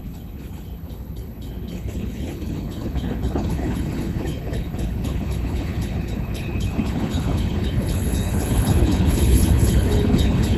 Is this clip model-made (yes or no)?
yes